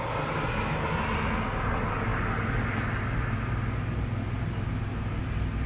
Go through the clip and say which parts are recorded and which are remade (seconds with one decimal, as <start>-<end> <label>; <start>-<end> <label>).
0.0-5.7 recorded